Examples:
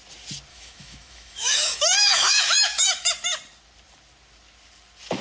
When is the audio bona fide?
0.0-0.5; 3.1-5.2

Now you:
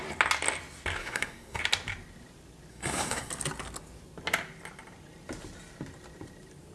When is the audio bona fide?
0.0-1.0; 1.6-2.7; 3.3-6.7

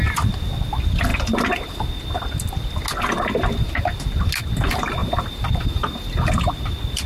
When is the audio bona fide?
0.0-5.0; 6.5-7.1

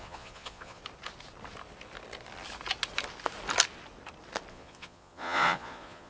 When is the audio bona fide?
0.8-4.5